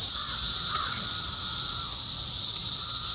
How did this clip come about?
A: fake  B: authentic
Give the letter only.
B